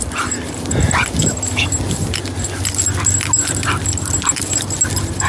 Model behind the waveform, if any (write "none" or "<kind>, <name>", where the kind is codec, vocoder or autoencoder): none